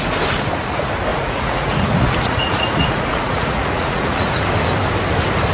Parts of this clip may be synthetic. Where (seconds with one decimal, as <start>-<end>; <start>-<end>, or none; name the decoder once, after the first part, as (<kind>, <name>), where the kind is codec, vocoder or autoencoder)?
1.1-4.4 (vocoder, Vocos)